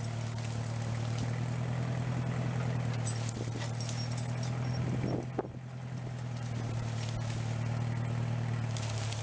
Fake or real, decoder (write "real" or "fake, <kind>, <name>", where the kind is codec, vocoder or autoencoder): real